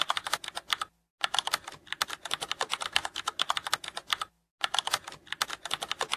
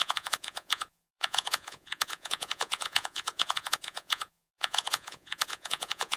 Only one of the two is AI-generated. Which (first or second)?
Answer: second